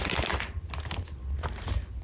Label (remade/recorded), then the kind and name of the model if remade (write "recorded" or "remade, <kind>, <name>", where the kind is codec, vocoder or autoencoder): recorded